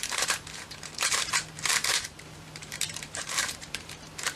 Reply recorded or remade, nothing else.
remade